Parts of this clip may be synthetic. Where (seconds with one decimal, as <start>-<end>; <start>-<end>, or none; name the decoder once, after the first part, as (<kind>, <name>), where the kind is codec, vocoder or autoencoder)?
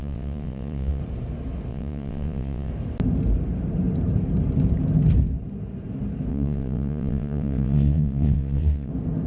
0.0-1.0 (vocoder, WaveNeXt); 1.7-2.7; 6.3-8.9